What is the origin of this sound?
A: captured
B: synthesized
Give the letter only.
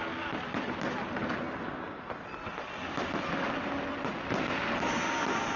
A